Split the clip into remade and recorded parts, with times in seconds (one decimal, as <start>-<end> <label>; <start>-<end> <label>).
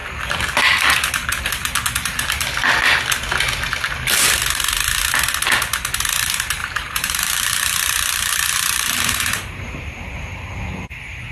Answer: 0.0-6.6 recorded; 6.6-10.6 remade; 10.6-11.3 recorded